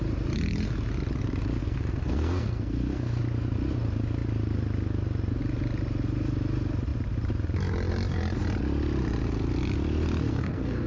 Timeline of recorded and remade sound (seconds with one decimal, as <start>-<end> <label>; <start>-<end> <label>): 0.0-1.6 recorded; 1.6-3.2 remade; 3.2-10.3 recorded; 10.3-10.9 remade